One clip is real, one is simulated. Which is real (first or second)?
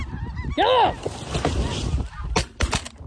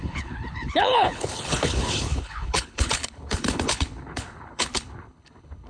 first